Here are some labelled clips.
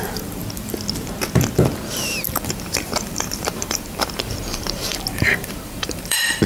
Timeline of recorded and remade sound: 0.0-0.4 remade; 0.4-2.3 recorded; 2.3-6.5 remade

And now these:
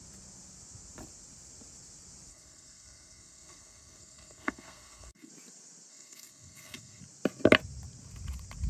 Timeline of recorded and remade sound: 0.0-2.3 recorded; 2.3-5.3 remade; 5.3-5.9 recorded; 5.9-7.0 remade; 7.0-8.7 recorded

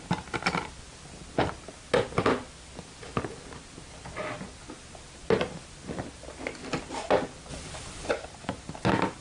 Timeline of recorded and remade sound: 0.0-7.5 recorded; 7.5-8.1 remade; 8.1-9.2 recorded

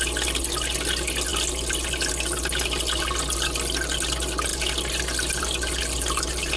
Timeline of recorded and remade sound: 0.0-6.6 recorded

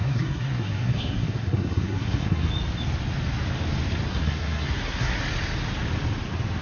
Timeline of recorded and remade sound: 0.0-2.5 remade; 2.5-4.1 recorded; 4.1-5.2 remade; 5.2-6.6 recorded

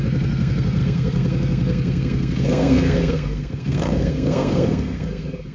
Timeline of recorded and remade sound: 0.0-5.5 remade